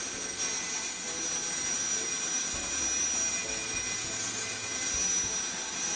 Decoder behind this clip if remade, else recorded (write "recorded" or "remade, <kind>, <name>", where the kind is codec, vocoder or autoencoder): recorded